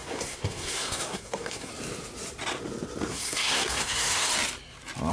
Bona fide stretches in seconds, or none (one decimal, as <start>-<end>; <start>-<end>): 1.7-3.1; 4.3-5.1